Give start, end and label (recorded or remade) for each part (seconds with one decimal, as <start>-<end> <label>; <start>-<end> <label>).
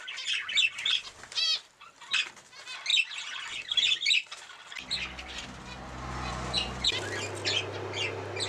0.0-8.5 recorded